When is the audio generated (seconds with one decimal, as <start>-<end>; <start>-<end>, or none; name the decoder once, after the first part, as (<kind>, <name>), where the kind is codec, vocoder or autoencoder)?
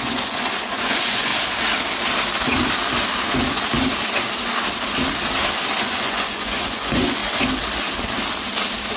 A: 0.0-1.3 (vocoder, Vocos); 5.8-7.2